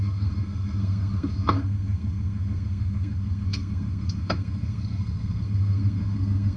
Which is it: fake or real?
fake